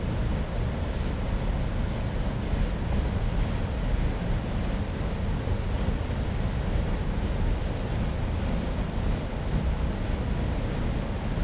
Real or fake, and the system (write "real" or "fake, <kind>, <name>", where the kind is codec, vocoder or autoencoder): real